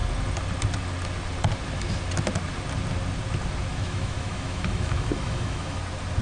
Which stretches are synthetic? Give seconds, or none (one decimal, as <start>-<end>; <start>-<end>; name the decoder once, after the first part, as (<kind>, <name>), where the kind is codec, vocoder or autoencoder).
3.7-5.8 (autoencoder, DAC-VAE)